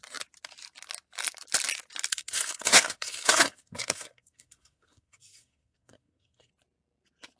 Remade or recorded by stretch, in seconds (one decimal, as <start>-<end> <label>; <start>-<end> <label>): 0.0-2.1 recorded; 2.1-6.5 remade; 6.5-7.4 recorded